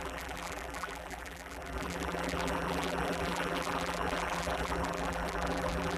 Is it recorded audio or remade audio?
remade